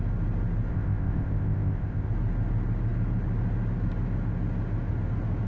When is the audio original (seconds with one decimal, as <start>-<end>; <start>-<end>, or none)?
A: 0.0-0.7; 2.1-5.5